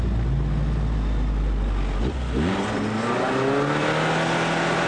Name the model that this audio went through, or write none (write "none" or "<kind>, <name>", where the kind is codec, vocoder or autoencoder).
none